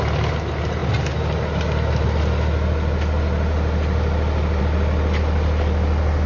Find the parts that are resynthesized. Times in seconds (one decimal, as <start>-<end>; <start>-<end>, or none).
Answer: none